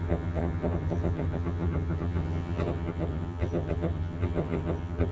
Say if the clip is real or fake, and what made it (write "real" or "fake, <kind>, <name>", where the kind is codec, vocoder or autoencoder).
fake, vocoder, HiFi-GAN